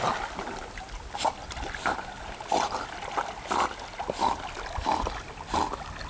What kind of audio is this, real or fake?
real